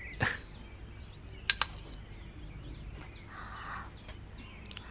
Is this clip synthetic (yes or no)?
no